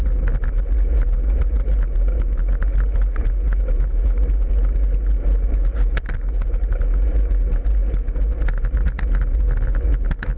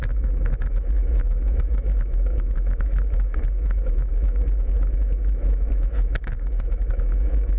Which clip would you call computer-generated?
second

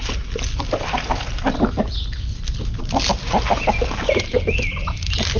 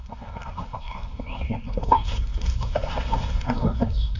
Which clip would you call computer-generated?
second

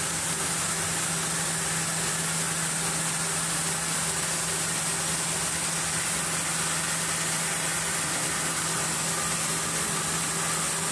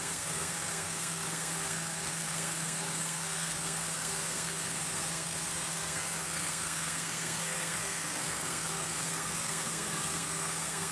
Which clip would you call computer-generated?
second